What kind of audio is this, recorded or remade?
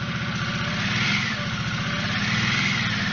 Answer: recorded